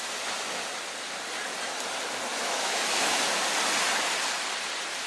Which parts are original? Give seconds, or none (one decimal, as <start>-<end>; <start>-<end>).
0.0-2.3; 3.2-5.1